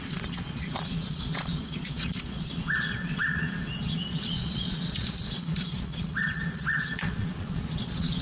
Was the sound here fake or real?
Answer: fake